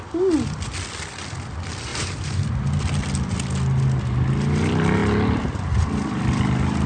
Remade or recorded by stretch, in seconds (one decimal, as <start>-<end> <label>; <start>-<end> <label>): 0.0-1.9 recorded; 1.9-2.4 remade; 2.4-6.9 recorded